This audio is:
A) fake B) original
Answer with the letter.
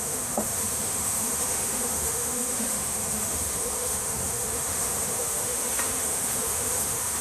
A